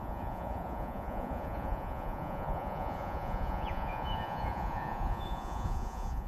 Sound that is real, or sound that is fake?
fake